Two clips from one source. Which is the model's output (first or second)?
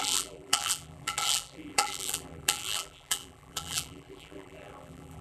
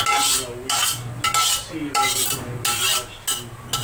first